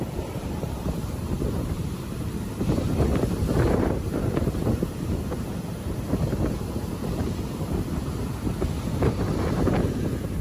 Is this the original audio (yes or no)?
no